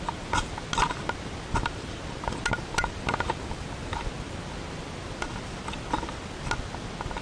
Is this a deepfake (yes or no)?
no